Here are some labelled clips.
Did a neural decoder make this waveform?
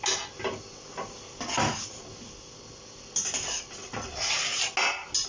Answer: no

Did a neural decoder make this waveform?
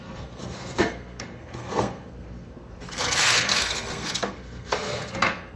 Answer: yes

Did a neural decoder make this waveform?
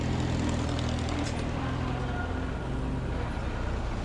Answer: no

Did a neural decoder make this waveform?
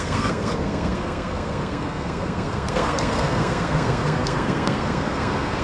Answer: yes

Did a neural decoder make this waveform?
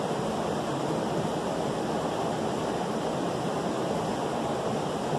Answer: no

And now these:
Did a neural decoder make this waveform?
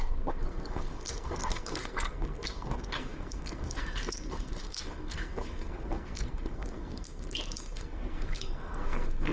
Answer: yes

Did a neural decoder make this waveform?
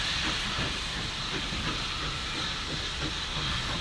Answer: no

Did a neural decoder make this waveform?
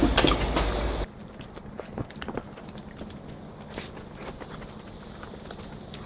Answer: no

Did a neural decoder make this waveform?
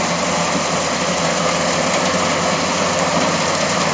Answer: no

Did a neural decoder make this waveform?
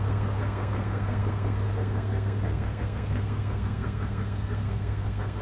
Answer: yes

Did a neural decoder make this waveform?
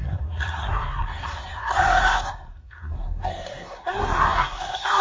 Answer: yes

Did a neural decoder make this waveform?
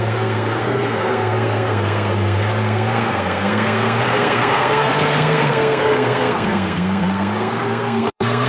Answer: yes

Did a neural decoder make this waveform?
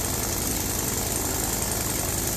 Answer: no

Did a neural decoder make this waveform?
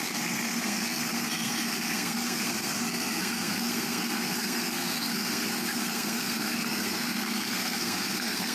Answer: yes